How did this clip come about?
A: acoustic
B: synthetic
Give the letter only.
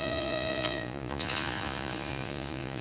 B